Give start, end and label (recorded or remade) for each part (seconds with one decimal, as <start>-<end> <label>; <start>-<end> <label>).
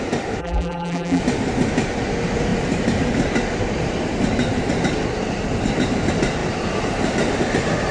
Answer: 0.0-0.4 recorded; 0.4-1.2 remade; 1.2-7.9 recorded